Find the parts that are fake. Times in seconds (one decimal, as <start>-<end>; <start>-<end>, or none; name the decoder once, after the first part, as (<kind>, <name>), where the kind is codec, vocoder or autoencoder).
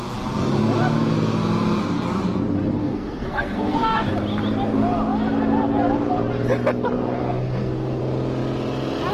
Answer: 2.8-4.1 (codec, SNAC); 7.2-8.0